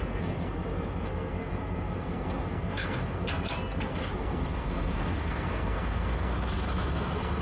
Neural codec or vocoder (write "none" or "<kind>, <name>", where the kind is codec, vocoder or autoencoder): codec, SNAC